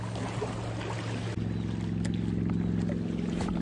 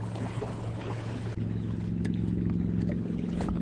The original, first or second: first